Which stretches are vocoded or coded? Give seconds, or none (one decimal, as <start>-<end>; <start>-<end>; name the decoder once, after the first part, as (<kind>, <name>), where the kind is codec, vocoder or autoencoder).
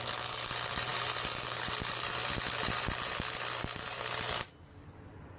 none